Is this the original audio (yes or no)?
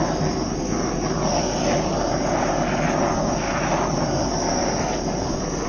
yes